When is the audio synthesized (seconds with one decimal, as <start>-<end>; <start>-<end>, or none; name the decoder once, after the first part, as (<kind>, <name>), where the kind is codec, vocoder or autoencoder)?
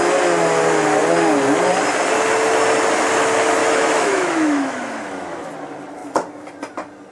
3.6-5.5 (autoencoder, DAC-VAE)